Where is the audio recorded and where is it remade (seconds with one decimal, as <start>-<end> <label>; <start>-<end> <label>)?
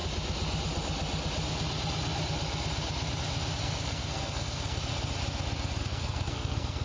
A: 0.0-3.6 recorded; 3.6-4.9 remade; 4.9-5.8 recorded; 5.8-6.8 remade